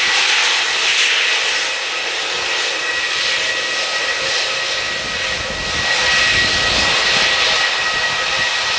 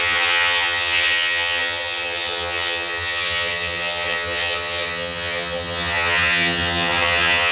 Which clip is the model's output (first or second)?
second